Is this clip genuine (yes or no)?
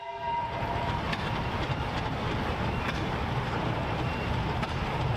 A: no